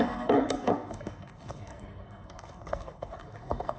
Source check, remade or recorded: remade